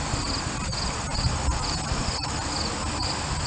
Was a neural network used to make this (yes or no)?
no